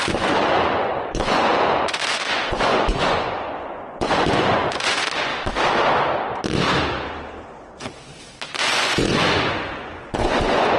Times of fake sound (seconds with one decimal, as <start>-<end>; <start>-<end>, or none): 0.0-5.3; 8.5-10.8